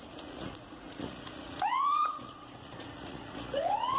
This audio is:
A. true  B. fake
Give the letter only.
B